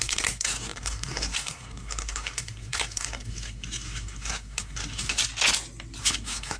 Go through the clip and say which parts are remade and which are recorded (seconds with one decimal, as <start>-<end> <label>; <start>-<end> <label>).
0.0-5.2 remade; 5.2-6.0 recorded; 6.0-6.6 remade